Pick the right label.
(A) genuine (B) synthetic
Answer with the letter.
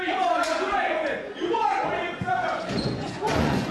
B